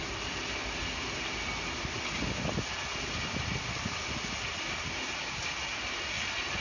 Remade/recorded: recorded